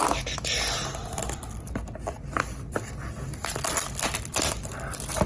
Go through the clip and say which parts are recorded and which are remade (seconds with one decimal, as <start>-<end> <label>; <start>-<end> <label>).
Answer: 0.0-5.3 recorded